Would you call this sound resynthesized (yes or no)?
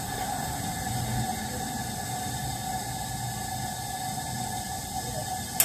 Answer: no